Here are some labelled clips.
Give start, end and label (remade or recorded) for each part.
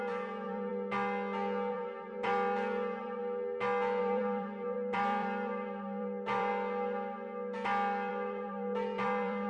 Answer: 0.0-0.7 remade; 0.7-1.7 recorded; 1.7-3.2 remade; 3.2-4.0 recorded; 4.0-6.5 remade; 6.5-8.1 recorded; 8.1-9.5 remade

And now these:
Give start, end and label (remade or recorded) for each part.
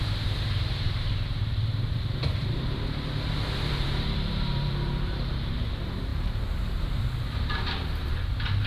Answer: 0.0-8.7 remade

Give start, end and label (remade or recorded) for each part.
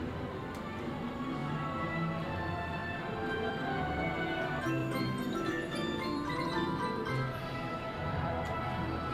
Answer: 0.0-2.8 recorded; 2.8-3.5 remade; 3.5-4.8 recorded; 4.8-9.1 remade